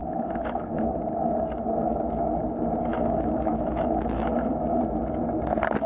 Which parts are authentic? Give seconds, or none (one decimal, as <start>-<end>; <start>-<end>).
0.8-2.9; 4.8-5.9